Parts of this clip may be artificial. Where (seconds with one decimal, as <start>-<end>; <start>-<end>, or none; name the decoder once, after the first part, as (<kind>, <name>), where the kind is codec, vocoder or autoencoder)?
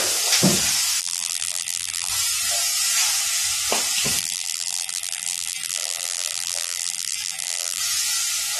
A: 1.0-2.1 (vocoder, BigVGAN v2); 4.2-7.8